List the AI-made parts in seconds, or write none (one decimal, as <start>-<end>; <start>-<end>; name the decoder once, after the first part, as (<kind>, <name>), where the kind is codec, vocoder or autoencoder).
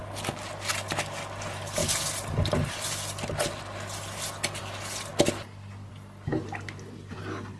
none